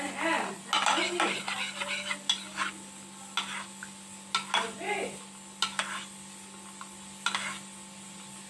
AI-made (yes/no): no